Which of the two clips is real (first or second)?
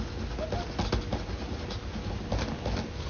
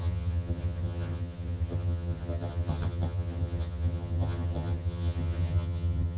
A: first